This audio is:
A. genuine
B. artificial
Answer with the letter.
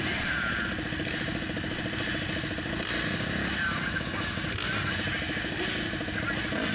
A